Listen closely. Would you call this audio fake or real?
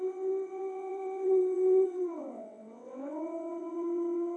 fake